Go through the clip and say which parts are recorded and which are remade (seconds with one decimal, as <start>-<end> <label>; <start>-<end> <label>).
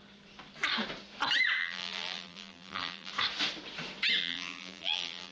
0.0-1.6 recorded; 1.6-3.1 remade; 3.1-4.2 recorded; 4.2-5.3 remade